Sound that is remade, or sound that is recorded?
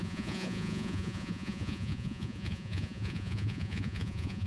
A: remade